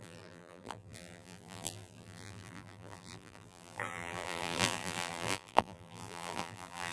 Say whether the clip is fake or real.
fake